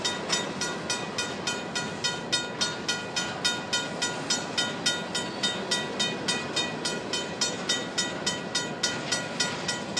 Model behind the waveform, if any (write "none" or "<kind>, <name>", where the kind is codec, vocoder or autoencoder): none